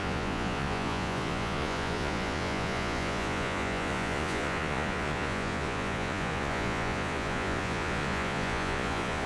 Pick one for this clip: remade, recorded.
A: remade